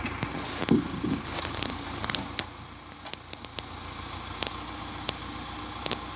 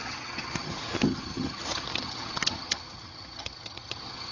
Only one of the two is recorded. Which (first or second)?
first